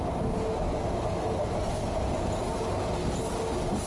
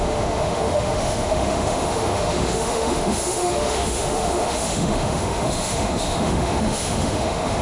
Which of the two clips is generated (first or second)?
second